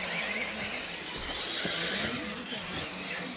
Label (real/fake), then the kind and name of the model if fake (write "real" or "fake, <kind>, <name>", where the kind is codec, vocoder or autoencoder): real